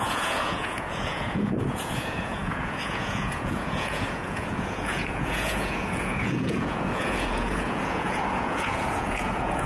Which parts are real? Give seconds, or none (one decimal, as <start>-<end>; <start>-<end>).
none